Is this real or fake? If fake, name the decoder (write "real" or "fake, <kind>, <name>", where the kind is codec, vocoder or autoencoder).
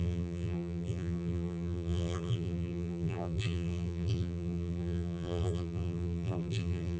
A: fake, vocoder, BigVGAN v2